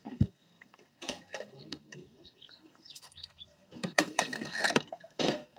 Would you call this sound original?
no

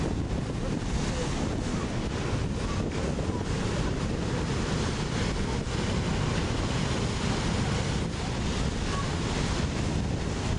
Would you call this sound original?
yes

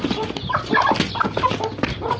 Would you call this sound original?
yes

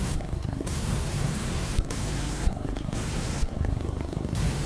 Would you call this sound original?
no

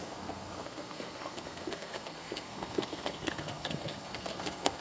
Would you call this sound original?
no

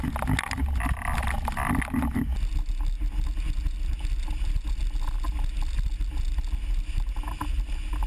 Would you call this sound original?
yes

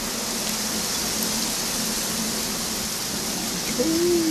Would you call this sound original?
yes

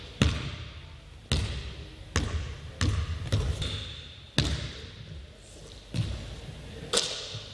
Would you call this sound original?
yes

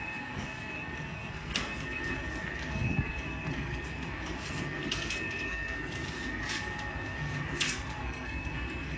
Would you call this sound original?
no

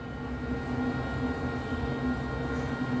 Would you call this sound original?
yes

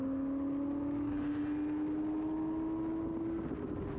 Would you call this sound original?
yes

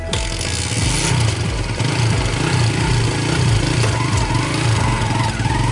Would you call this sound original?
yes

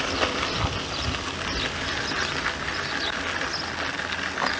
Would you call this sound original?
yes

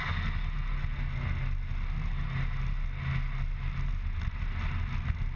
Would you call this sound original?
yes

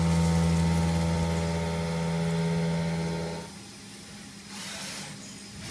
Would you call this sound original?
yes